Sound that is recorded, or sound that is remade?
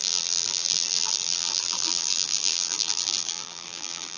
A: remade